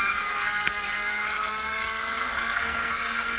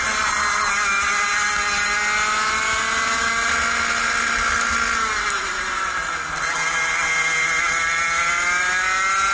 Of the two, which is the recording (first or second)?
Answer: second